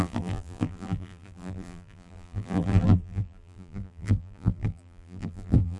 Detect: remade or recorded remade